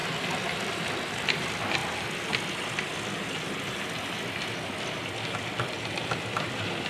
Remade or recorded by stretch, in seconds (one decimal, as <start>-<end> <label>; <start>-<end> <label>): 0.0-0.7 recorded; 0.7-1.8 remade; 1.8-5.8 recorded; 5.8-6.9 remade